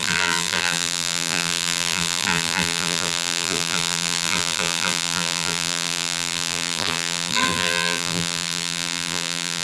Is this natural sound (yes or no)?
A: no